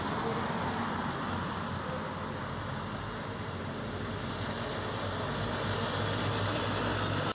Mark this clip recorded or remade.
recorded